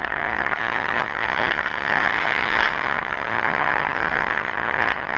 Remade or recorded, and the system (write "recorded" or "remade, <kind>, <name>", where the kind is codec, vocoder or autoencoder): remade, vocoder, HiFi-GAN